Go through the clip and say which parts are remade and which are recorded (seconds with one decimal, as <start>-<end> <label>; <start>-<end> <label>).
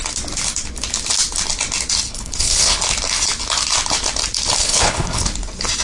0.0-2.1 recorded; 2.1-2.8 remade; 2.8-4.6 recorded; 4.6-5.2 remade; 5.2-5.8 recorded